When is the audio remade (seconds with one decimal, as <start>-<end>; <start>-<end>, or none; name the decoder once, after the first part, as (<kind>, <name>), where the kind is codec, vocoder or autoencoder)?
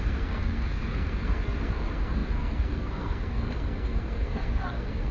0.0-5.1 (codec, SNAC)